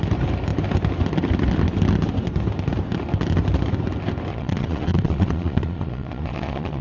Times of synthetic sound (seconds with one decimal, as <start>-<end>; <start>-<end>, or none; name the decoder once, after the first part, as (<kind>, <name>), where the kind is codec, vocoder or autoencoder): 4.3-6.8 (vocoder, Vocos)